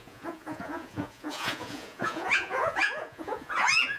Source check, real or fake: fake